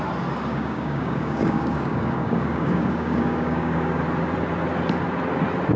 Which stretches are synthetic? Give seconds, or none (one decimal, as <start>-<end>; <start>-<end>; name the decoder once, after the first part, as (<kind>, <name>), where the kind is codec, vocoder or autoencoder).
0.5-4.0 (codec, DAC)